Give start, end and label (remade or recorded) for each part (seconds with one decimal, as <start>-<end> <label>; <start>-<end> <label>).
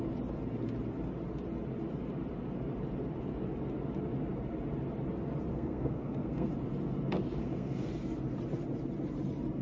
0.0-5.5 recorded; 5.5-6.5 remade; 6.5-7.4 recorded; 7.4-7.9 remade; 7.9-9.6 recorded